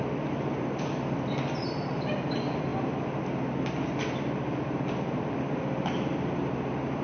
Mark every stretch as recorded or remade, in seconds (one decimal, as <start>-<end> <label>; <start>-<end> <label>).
0.0-2.7 remade; 2.7-5.2 recorded; 5.2-7.0 remade